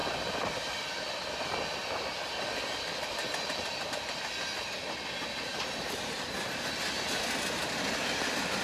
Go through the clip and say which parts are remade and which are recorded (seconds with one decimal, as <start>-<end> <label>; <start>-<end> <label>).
0.0-8.6 recorded